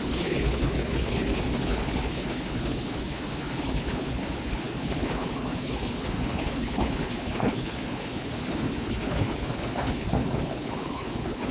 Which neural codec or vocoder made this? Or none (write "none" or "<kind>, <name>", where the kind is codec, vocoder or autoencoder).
codec, HILCodec